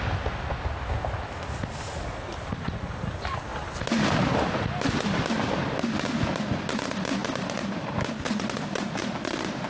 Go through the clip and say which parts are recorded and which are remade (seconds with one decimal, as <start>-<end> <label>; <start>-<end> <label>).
0.0-7.2 recorded; 7.2-8.0 remade; 8.0-9.7 recorded